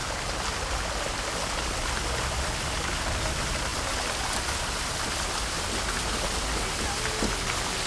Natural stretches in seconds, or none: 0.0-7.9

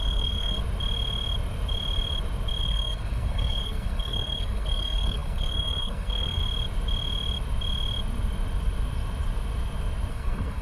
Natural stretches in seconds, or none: 0.6-2.6; 6.4-10.1

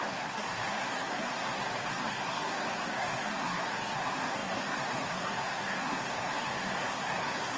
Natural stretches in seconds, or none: none

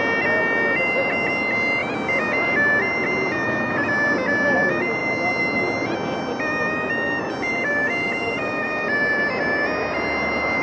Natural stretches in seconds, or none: 0.0-10.6

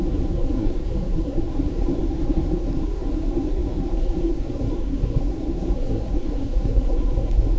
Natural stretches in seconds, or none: none

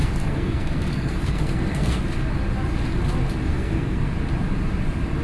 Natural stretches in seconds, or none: 2.0-3.5; 4.1-5.2